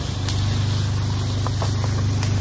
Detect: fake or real real